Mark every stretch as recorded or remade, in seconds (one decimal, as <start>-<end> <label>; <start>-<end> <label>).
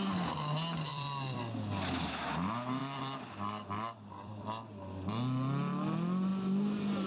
0.0-0.9 recorded; 0.9-1.4 remade; 1.4-2.8 recorded; 2.8-4.3 remade; 4.3-7.1 recorded